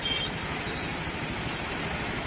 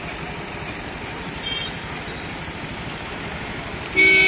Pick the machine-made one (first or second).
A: first